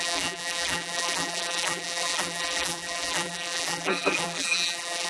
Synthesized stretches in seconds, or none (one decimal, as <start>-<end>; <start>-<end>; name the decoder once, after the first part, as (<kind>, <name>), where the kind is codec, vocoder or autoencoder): 0.0-5.1 (vocoder, BigVGAN v2)